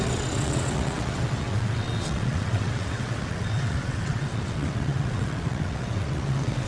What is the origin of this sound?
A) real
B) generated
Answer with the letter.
B